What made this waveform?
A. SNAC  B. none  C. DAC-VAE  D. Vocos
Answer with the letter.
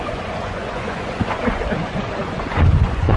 D